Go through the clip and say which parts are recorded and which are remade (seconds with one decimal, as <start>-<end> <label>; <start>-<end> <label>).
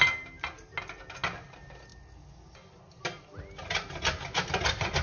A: 0.0-5.0 recorded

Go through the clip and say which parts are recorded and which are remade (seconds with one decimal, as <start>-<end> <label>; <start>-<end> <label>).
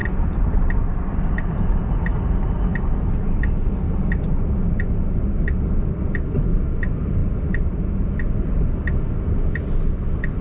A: 0.0-10.4 recorded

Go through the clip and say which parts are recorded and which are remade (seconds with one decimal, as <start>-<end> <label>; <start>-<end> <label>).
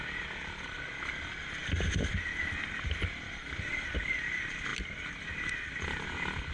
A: 0.0-6.5 recorded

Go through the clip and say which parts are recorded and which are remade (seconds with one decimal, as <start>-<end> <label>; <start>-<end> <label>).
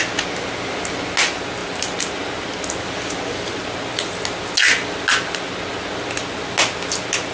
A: 0.0-7.3 recorded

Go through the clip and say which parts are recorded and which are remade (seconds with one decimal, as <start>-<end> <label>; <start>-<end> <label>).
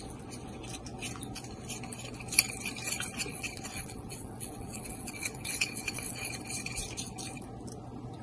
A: 0.0-3.3 recorded; 3.3-6.3 remade; 6.3-8.2 recorded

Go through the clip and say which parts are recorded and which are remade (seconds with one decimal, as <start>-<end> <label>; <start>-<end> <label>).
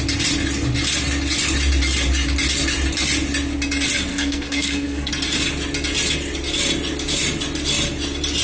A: 0.0-4.1 recorded; 4.1-5.1 remade; 5.1-8.4 recorded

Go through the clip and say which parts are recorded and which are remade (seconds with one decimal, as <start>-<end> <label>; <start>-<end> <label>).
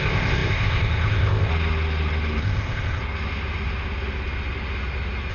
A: 0.0-1.5 remade; 1.5-2.4 recorded; 2.4-3.0 remade; 3.0-5.3 recorded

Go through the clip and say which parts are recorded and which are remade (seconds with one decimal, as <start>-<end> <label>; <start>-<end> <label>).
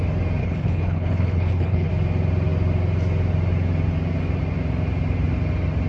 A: 0.0-0.4 recorded; 0.4-1.9 remade; 1.9-5.9 recorded